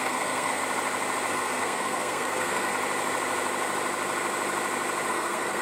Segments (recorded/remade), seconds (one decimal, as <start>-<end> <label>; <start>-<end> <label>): 0.0-0.6 remade; 0.6-1.3 recorded; 1.3-2.7 remade; 2.7-5.1 recorded; 5.1-5.6 remade